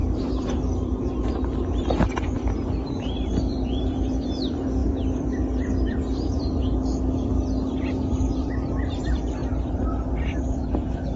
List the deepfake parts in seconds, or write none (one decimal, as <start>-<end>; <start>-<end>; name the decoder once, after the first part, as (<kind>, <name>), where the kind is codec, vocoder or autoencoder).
0.0-11.2 (vocoder, BigVGAN v2)